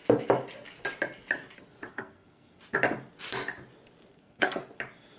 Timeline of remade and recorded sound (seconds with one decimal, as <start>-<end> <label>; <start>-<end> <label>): 0.0-1.9 recorded; 1.9-2.6 remade; 2.6-4.1 recorded; 4.1-4.6 remade; 4.6-5.2 recorded